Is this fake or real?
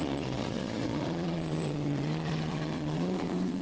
fake